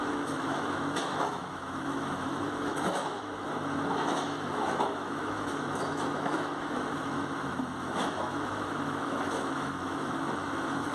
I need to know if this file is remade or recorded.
remade